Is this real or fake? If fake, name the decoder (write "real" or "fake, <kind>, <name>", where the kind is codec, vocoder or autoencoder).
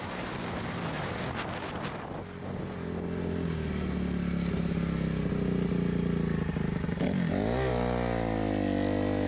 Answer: real